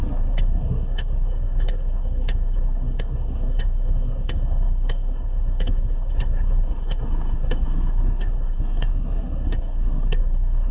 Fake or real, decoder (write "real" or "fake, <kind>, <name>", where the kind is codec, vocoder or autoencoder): fake, codec, SNAC